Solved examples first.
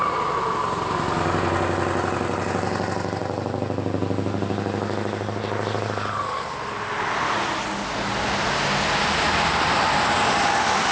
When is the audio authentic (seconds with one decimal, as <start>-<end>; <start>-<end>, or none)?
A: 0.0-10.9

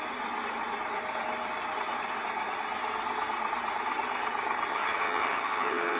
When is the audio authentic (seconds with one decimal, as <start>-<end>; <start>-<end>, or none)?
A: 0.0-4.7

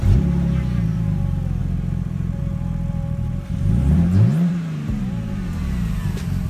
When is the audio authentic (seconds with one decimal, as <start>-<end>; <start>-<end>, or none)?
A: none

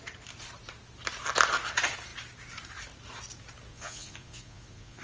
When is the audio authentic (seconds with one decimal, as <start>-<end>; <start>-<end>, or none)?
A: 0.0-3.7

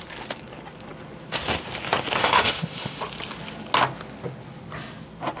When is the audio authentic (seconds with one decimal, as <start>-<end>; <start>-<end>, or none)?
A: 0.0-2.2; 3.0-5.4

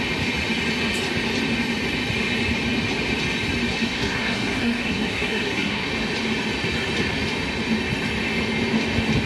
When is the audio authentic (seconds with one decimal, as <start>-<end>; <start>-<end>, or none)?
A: 0.0-3.7; 5.9-9.3

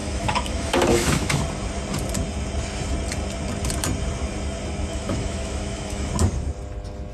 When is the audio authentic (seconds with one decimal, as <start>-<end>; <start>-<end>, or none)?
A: 1.4-4.9; 6.1-7.1